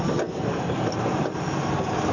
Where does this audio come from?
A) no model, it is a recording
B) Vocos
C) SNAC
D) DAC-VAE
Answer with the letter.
A